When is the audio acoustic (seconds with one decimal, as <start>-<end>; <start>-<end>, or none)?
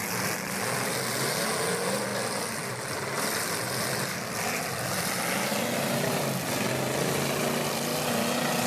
0.0-8.7